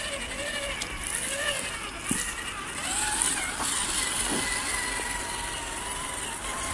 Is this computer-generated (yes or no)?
no